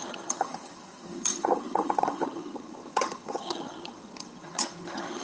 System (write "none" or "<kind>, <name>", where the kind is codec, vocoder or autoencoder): vocoder, HiFi-GAN